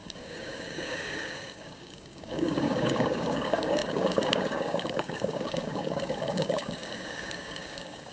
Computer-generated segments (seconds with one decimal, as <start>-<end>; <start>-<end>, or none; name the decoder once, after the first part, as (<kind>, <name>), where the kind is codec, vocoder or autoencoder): 0.0-8.1 (codec, DAC)